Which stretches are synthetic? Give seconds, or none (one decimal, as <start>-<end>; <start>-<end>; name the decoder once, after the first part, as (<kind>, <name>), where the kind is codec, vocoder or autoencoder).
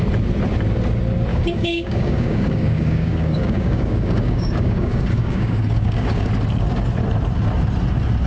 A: 1.3-6.3 (codec, DAC)